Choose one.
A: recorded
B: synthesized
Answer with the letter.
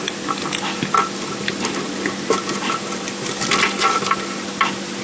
A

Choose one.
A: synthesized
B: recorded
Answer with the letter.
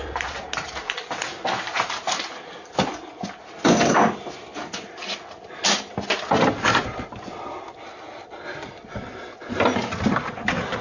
B